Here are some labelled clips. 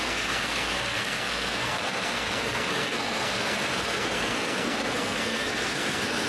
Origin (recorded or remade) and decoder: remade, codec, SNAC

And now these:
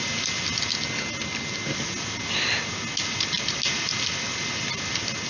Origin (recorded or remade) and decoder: recorded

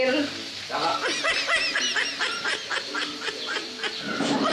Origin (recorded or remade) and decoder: recorded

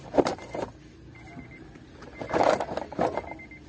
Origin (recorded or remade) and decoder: recorded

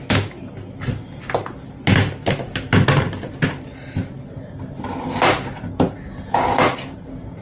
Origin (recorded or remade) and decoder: recorded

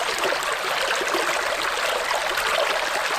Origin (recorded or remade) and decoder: recorded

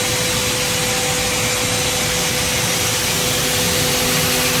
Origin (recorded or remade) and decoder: recorded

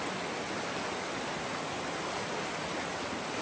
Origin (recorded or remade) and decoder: recorded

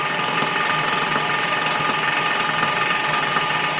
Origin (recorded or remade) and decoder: recorded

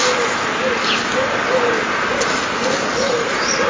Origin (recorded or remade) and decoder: recorded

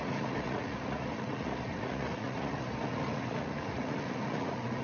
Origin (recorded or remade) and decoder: remade, vocoder, Vocos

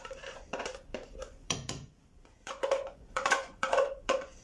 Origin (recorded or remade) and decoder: remade, vocoder, Vocos